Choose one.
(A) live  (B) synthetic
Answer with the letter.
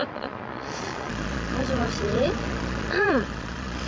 B